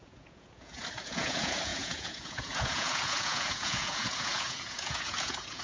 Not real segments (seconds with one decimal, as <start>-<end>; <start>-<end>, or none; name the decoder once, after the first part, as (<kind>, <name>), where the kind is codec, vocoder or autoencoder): 0.0-5.6 (vocoder, Vocos)